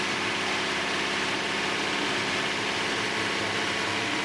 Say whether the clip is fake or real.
fake